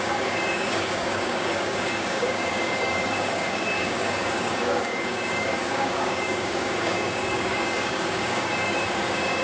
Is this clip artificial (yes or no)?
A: yes